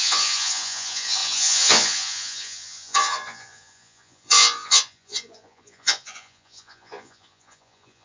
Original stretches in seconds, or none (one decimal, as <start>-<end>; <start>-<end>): none